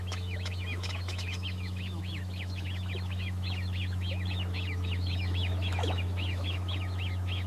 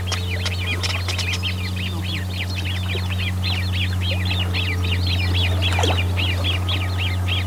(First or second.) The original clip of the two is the second